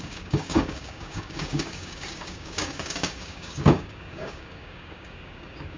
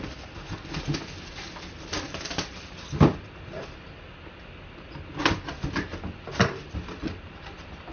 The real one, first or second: second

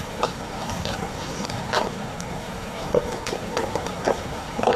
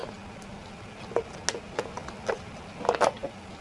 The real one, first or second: second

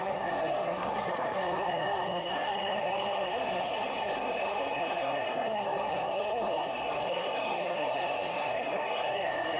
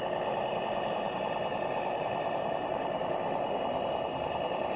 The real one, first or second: second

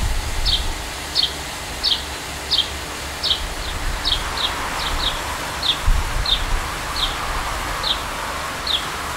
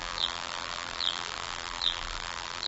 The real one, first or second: first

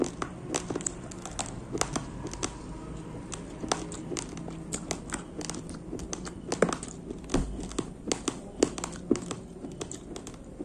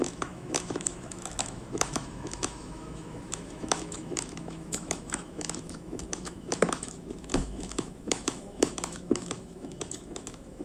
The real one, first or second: first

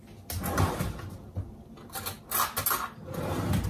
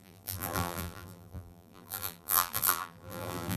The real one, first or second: first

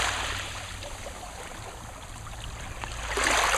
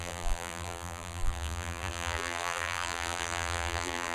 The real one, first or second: first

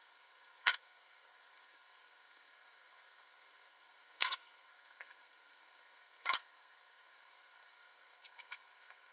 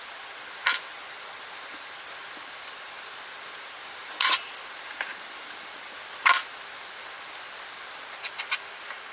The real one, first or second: second